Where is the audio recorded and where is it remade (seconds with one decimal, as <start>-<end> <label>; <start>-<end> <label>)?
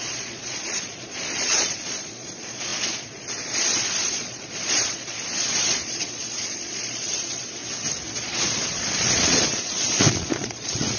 0.0-7.6 remade; 7.6-8.1 recorded; 8.1-11.0 remade